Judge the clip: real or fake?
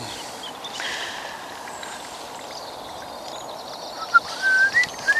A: real